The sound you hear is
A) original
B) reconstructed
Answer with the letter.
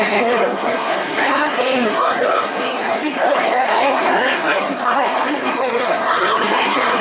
B